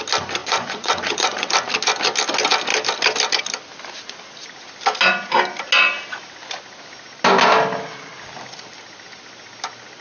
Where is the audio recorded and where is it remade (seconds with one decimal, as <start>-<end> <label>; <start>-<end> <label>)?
0.0-0.4 recorded; 0.4-1.5 remade; 1.5-10.0 recorded